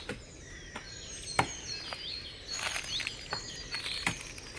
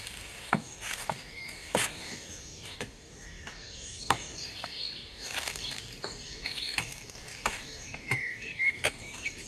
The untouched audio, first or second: first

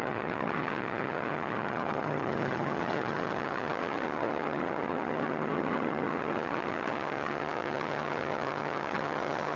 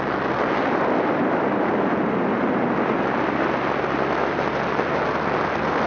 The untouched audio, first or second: second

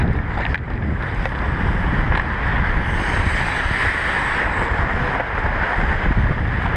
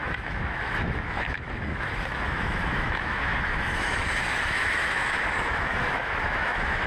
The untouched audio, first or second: first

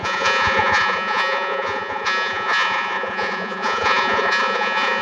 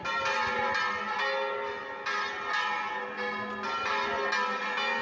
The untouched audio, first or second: second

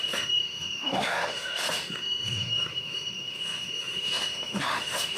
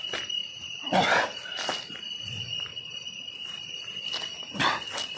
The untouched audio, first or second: second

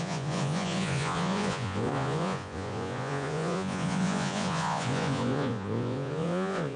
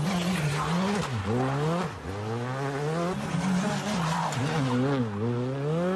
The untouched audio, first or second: second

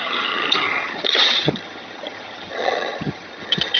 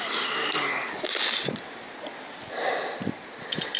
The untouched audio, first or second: second